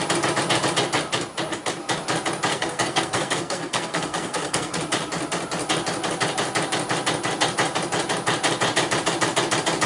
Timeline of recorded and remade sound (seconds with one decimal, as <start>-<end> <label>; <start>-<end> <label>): 0.0-2.5 recorded; 2.5-4.8 remade; 4.8-9.9 recorded

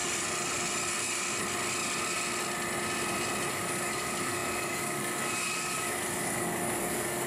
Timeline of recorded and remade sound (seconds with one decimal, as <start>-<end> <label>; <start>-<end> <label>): 0.0-3.5 recorded; 3.5-7.3 remade